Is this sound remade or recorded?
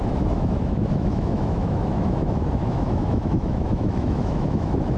remade